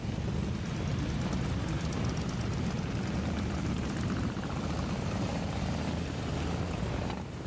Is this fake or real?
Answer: real